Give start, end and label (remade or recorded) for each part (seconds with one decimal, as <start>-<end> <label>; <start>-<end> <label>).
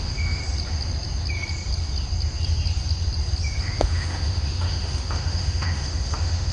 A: 0.0-0.4 remade; 0.4-3.6 recorded; 3.6-6.5 remade